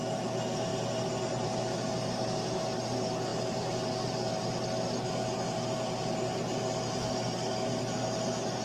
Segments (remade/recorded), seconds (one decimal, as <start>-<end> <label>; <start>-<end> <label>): 0.0-8.6 recorded